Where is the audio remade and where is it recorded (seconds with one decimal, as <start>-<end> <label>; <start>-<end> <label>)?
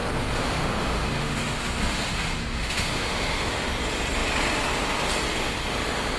0.0-3.7 remade; 3.7-6.2 recorded